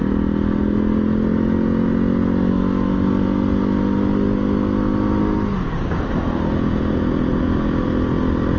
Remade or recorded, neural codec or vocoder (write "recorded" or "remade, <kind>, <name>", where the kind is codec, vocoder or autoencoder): recorded